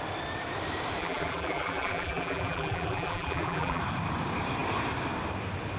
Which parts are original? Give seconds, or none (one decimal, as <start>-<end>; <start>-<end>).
0.0-1.0; 3.8-5.8